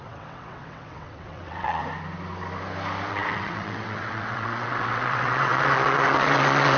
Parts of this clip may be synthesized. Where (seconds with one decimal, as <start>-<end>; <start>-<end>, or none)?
0.0-1.8; 3.1-6.8